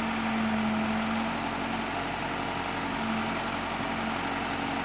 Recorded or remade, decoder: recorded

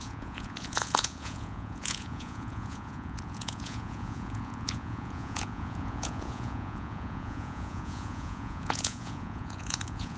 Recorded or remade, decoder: remade, vocoder, Vocos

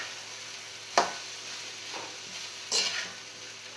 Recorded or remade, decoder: recorded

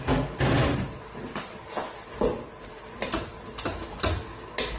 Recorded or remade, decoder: recorded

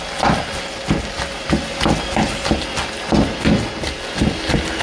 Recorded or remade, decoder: recorded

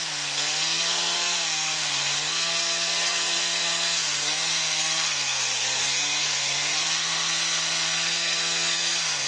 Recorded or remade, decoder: remade, codec, SNAC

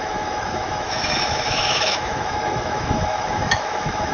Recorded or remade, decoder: remade, autoencoder, DAC-VAE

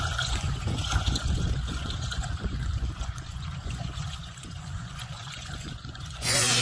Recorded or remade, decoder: remade, vocoder, Vocos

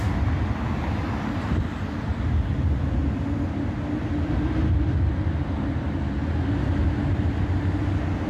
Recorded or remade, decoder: recorded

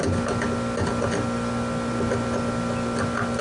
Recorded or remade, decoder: recorded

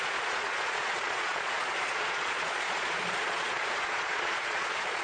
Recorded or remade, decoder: remade, vocoder, Vocos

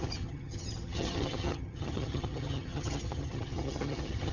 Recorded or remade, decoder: remade, vocoder, HiFi-GAN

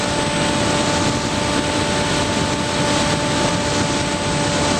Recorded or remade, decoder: recorded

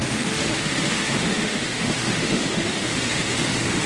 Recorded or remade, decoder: remade, autoencoder, DAC-VAE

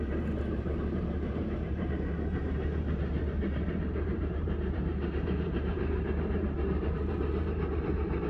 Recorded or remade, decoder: remade, vocoder, BigVGAN v2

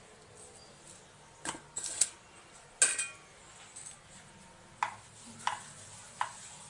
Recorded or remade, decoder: recorded